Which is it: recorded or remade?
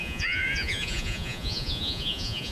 remade